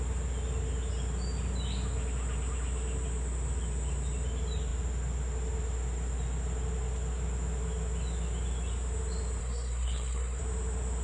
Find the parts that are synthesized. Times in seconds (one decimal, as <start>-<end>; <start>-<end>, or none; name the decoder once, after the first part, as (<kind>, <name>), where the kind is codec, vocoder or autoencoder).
9.4-10.4 (codec, SNAC)